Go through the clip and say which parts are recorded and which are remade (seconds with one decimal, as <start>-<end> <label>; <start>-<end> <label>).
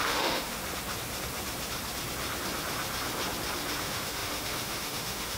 0.0-0.6 remade; 0.6-3.8 recorded; 3.8-5.4 remade